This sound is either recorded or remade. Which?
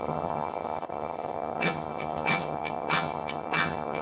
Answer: remade